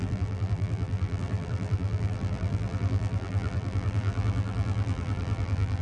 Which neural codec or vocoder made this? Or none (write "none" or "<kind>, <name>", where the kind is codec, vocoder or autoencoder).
vocoder, BigVGAN v2